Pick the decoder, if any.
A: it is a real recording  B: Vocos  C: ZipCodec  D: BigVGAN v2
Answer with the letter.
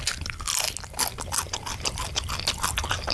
A